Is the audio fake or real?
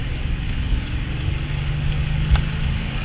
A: fake